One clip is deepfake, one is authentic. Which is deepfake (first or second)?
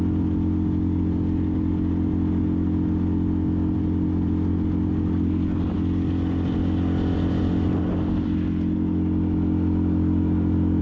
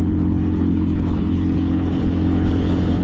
second